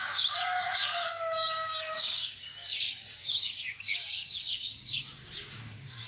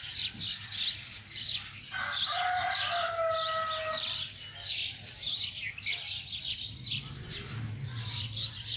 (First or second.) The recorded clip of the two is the second